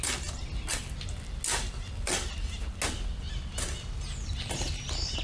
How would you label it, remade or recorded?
recorded